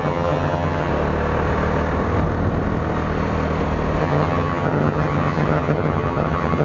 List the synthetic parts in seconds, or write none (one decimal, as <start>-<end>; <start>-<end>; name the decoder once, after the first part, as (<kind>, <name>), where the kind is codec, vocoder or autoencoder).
0.0-0.9 (vocoder, HiFi-GAN); 4.0-6.6

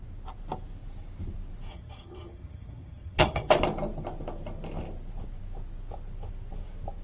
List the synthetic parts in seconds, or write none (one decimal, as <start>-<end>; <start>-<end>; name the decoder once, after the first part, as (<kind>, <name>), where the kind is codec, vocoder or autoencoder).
1.7-3.5 (vocoder, HiFi-GAN)

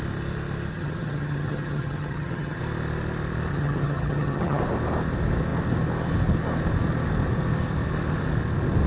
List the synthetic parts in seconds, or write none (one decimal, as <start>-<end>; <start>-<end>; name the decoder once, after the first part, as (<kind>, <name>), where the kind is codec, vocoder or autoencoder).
0.7-2.6 (vocoder, HiFi-GAN); 3.5-4.6

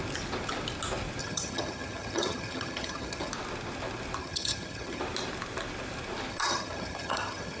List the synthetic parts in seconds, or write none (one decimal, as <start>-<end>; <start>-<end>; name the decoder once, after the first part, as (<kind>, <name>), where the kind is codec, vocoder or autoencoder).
1.2-3.3 (vocoder, HiFi-GAN); 4.2-5.0; 6.3-7.6

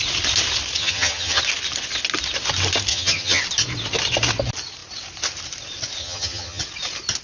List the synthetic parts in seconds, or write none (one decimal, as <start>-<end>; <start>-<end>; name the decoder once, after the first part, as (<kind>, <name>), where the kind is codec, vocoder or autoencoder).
0.8-1.4 (vocoder, HiFi-GAN); 2.9-3.4; 6.0-6.6

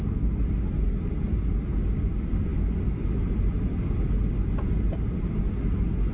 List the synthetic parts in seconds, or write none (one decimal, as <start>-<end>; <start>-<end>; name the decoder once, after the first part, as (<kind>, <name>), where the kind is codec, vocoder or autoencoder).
none

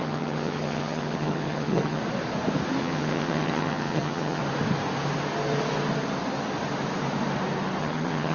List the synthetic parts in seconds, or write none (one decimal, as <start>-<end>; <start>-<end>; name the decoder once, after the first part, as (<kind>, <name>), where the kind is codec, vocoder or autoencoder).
0.0-2.0 (vocoder, HiFi-GAN); 2.8-4.4; 7.8-8.3

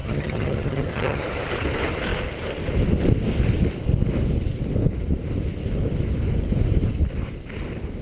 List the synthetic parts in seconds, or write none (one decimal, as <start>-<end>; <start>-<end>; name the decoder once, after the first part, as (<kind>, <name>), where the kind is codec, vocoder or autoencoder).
0.0-1.2 (vocoder, HiFi-GAN)